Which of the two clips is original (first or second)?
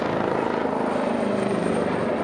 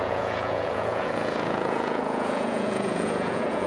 first